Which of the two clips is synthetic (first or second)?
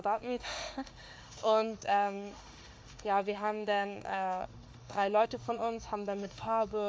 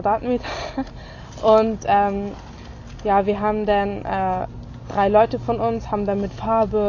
first